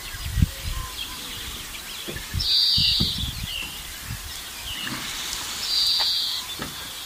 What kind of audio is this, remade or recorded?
recorded